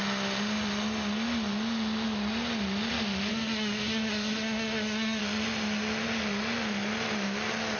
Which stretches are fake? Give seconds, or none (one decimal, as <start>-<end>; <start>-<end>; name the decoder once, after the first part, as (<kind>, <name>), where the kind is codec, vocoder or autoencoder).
3.3-5.2 (codec, SNAC)

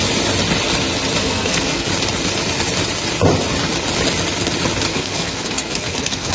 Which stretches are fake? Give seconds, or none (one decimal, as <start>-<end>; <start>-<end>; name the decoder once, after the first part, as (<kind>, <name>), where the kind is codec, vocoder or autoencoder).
1.2-1.9 (codec, SNAC); 4.9-6.3

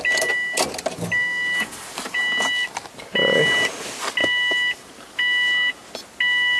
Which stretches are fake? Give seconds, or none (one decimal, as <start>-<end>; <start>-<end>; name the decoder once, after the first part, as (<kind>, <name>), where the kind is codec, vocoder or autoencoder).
none